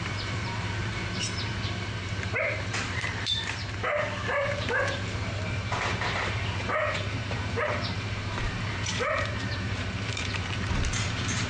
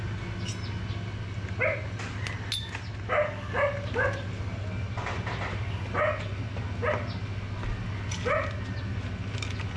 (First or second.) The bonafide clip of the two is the second